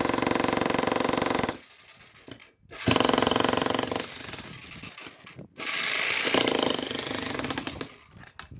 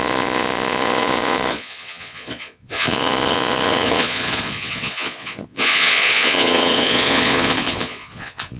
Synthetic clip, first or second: second